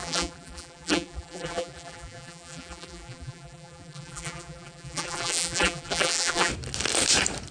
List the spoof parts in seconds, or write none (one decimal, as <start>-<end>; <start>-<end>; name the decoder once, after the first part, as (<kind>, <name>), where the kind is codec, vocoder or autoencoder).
0.0-6.5 (vocoder, BigVGAN v2)